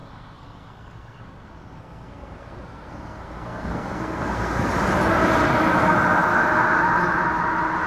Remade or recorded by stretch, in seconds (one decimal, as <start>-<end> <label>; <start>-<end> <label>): 0.0-4.7 remade; 4.7-7.9 recorded